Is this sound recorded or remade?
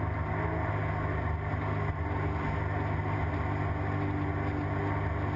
recorded